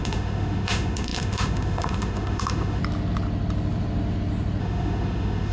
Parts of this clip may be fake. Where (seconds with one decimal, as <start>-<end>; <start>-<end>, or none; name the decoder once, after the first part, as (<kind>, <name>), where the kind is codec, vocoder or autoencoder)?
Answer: 0.0-2.8 (autoencoder, DAC-VAE); 4.6-5.5